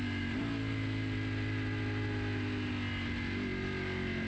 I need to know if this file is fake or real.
real